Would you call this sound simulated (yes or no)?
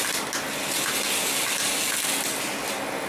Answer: no